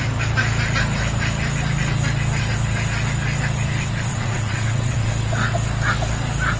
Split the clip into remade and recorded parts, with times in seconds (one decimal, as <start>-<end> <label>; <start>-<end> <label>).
0.0-4.1 recorded; 4.1-5.1 remade; 5.1-6.6 recorded